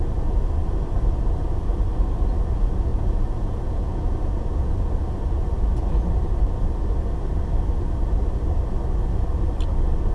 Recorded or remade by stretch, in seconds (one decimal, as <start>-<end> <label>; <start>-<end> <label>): 0.0-2.9 recorded; 2.9-4.7 remade; 4.7-10.1 recorded